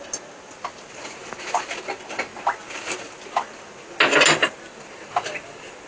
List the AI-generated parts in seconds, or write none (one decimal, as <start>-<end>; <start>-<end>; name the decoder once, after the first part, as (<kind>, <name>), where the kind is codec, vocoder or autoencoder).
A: none